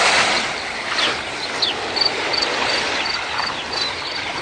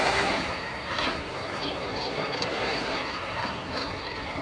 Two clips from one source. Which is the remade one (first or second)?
second